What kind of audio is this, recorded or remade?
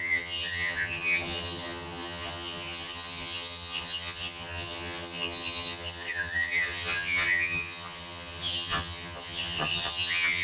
remade